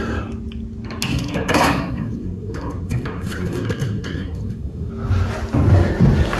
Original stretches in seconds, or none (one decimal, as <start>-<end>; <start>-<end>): 0.0-1.1; 4.9-6.4